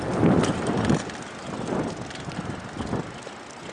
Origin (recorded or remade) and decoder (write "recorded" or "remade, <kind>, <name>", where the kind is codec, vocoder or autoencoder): recorded